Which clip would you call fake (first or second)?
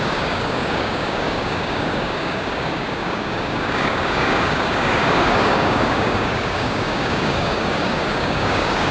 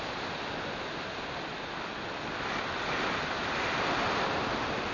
first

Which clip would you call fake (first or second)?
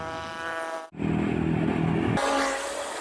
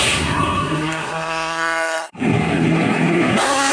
second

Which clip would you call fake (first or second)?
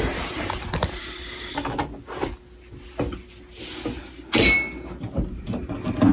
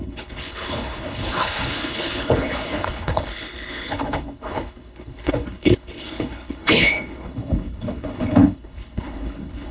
second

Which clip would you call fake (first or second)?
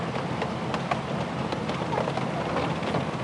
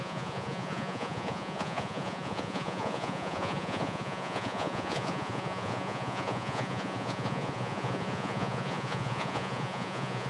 second